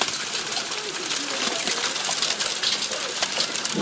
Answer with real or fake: real